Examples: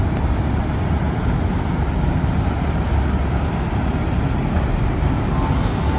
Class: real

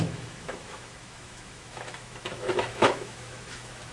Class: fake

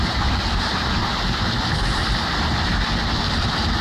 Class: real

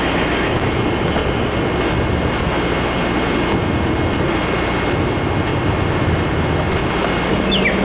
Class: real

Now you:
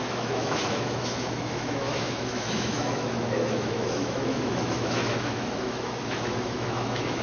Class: fake